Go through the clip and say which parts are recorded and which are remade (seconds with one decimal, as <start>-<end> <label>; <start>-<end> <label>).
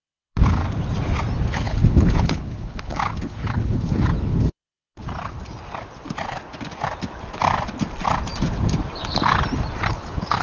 0.0-0.6 remade; 0.6-1.5 recorded; 1.5-5.0 remade; 5.0-9.9 recorded; 9.9-10.4 remade